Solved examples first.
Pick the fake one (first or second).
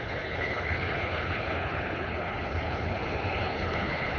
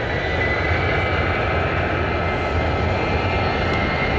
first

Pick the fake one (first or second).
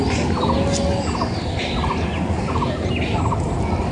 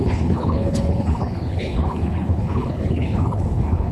second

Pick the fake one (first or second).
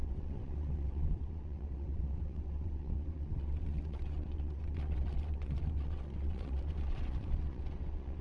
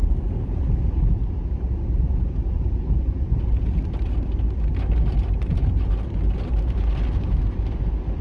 first